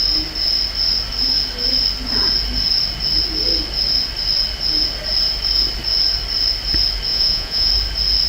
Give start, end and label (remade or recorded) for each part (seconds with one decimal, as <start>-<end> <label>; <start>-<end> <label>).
0.0-7.1 recorded; 7.1-7.7 remade; 7.7-8.3 recorded